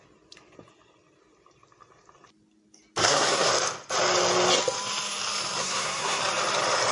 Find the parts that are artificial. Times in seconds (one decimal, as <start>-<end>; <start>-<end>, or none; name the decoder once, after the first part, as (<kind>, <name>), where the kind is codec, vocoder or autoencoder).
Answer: 3.0-3.5 (codec, SNAC); 5.6-6.2